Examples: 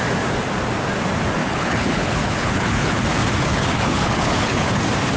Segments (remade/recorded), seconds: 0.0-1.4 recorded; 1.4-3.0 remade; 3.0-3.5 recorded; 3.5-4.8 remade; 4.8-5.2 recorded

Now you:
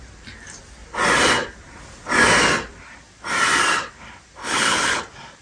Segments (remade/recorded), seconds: 0.0-4.4 recorded; 4.4-5.0 remade; 5.0-5.4 recorded

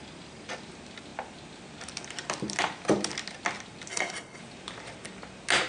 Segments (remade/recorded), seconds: 0.0-3.9 recorded; 3.9-4.4 remade; 4.4-5.7 recorded

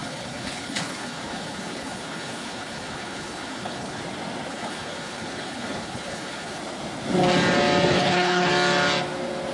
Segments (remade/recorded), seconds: 0.0-4.0 remade; 4.0-4.5 recorded; 4.5-6.6 remade; 6.6-7.9 recorded; 7.9-8.5 remade; 8.5-9.5 recorded

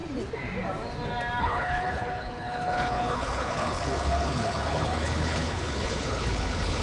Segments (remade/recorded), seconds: 0.0-1.4 recorded; 1.4-6.8 remade

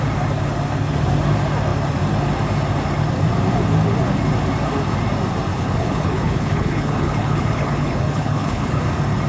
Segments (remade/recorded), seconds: 0.0-5.5 recorded; 5.5-8.8 remade; 8.8-9.3 recorded

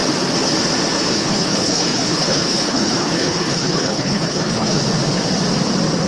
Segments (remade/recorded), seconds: 0.0-1.1 recorded; 1.1-4.8 remade; 4.8-6.1 recorded

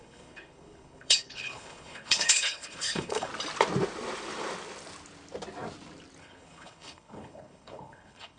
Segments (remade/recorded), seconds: 0.0-3.3 remade; 3.3-6.2 recorded; 6.2-8.4 remade